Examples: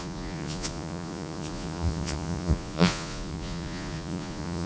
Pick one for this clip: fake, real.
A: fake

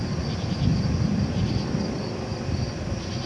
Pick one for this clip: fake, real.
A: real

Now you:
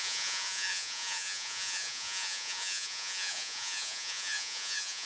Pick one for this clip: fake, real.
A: fake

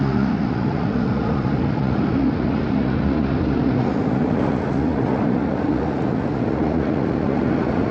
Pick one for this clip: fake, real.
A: fake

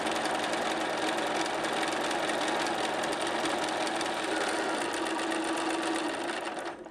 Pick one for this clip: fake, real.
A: real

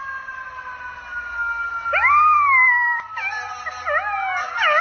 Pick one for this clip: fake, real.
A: real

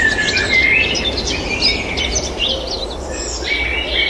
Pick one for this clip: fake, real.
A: real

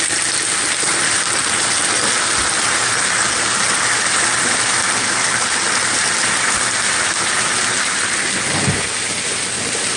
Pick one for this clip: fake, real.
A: real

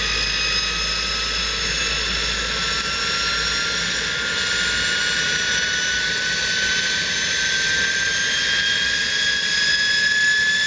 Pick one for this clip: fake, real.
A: real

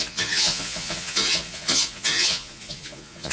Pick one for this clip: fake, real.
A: fake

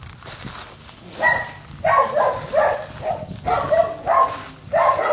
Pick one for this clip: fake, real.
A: real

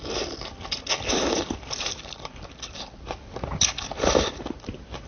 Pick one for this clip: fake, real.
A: real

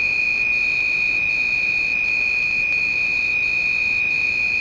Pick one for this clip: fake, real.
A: real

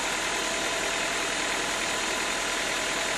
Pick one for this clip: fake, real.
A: real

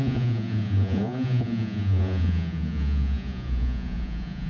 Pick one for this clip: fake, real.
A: fake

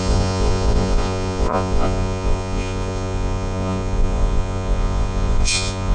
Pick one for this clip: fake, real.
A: fake